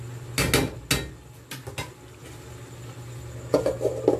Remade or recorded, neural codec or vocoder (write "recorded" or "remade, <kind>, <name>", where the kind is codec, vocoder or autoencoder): recorded